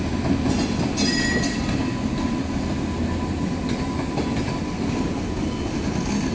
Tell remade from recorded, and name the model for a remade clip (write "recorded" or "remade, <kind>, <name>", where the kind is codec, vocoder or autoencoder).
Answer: recorded